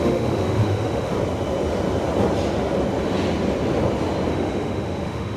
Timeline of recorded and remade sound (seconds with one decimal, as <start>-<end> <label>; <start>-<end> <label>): 0.0-1.1 remade; 1.1-4.3 recorded; 4.3-5.4 remade